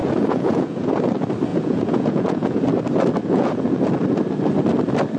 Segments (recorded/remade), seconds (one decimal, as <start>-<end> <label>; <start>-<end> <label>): 0.0-0.9 remade; 0.9-1.5 recorded; 1.5-2.6 remade; 2.6-3.2 recorded; 3.2-3.8 remade; 3.8-5.2 recorded